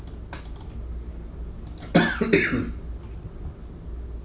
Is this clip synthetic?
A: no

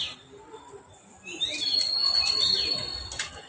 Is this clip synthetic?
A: no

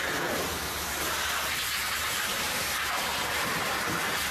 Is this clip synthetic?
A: no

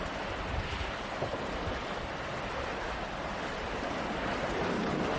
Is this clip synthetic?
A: no